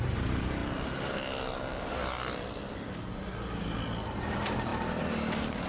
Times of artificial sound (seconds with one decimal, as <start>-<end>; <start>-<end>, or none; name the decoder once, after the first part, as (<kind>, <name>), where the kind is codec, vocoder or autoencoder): none